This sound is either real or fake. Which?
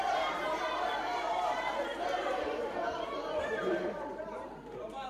fake